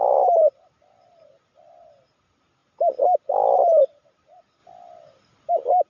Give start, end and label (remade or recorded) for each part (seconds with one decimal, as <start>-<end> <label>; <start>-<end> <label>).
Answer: 0.0-5.9 recorded